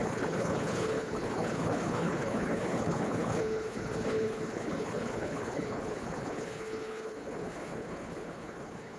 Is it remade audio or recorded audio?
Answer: remade